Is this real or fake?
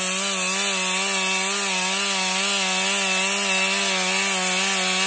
real